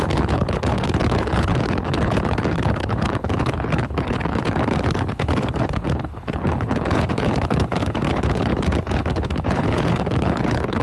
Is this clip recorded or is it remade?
remade